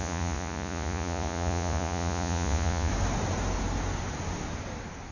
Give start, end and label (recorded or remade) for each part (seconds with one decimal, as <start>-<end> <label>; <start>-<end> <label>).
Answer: 0.0-2.9 remade; 2.9-5.1 recorded